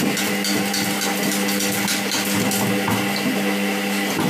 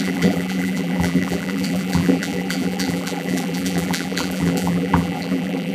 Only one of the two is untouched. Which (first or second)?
first